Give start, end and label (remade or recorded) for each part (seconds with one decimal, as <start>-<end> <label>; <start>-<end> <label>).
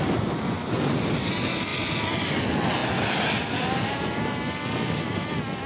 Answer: 0.0-5.7 recorded